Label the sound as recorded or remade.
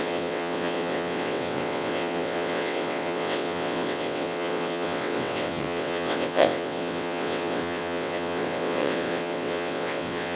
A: remade